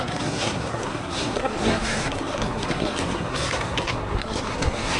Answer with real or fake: fake